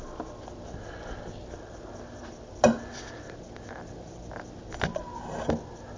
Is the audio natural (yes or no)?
yes